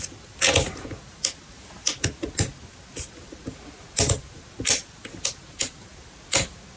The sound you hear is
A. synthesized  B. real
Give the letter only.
B